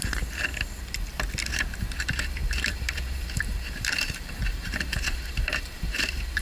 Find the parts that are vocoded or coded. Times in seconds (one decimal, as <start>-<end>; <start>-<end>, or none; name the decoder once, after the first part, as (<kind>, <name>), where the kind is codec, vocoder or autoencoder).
0.0-0.5 (vocoder, BigVGAN v2); 1.5-6.4